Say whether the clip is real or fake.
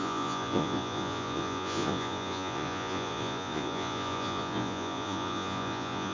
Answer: fake